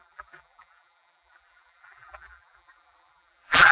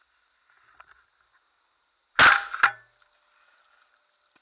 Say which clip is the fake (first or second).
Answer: first